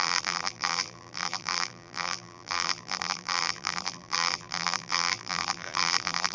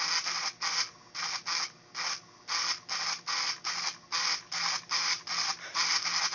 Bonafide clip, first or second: second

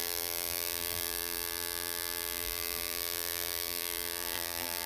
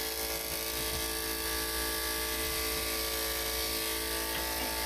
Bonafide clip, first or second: second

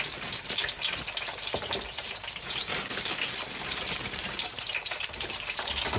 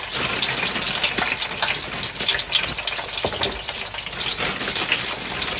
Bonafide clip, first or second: second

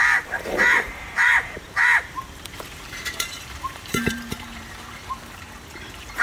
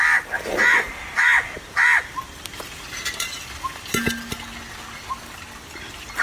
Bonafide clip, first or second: second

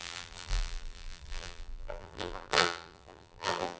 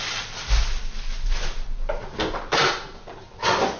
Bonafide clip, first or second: second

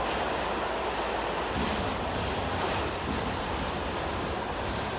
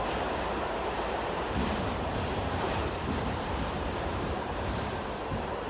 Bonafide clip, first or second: first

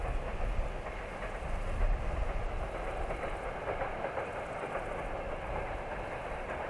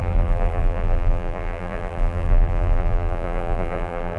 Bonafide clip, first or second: first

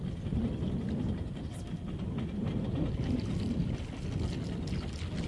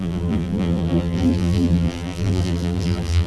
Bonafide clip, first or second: first